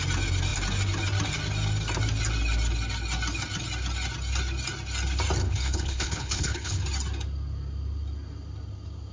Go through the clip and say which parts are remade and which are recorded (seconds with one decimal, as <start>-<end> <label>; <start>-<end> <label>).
0.0-5.4 recorded; 5.4-6.8 remade; 6.8-9.1 recorded